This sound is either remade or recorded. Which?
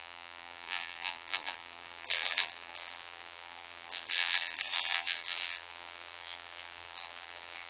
remade